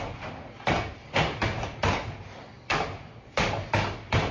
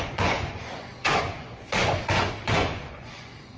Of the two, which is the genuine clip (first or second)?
first